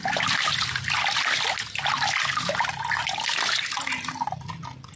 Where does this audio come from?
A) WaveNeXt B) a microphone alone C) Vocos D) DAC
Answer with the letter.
B